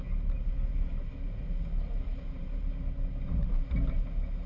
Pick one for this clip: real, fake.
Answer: real